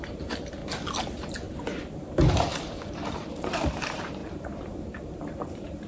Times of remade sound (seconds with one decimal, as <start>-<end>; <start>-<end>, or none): 0.0-0.6; 2.0-5.9